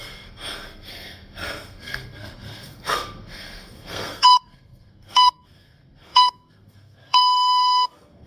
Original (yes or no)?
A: no